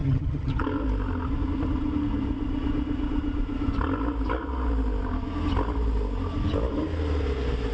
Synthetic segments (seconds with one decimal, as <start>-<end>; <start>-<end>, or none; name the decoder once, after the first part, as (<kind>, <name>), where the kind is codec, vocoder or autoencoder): 0.0-0.6 (vocoder, HiFi-GAN)